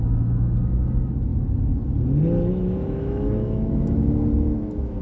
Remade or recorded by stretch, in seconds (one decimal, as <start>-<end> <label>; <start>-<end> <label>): 0.0-1.3 remade; 1.3-2.5 recorded; 2.5-5.0 remade